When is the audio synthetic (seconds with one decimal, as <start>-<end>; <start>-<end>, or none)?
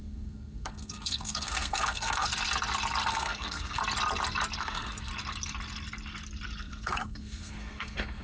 0.0-2.3; 3.1-3.8; 4.6-5.1; 6.6-8.2